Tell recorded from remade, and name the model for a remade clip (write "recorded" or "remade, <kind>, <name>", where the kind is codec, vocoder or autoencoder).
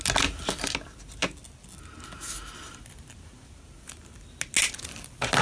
recorded